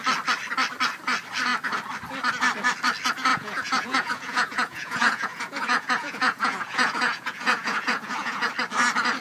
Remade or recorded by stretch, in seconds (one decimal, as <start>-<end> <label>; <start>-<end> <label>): 0.0-3.3 recorded; 3.3-8.5 remade; 8.5-9.2 recorded